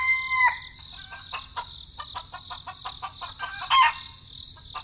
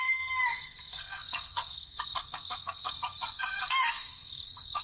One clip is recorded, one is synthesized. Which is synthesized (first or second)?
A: second